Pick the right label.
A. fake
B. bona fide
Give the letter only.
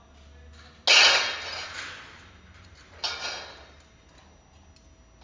B